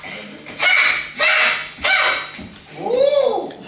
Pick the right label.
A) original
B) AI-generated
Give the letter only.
A